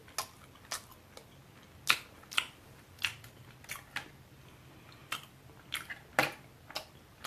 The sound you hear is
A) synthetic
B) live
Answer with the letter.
B